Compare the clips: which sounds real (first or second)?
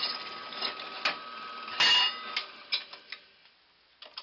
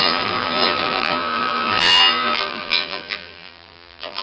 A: first